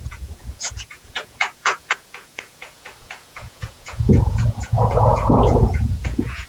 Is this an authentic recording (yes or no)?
no